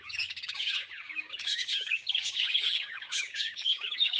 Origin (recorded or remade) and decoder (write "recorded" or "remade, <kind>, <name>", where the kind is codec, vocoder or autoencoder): remade, codec, DAC